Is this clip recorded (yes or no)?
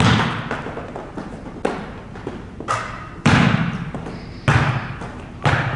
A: yes